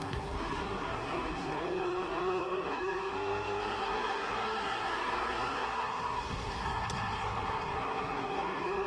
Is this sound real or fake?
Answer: fake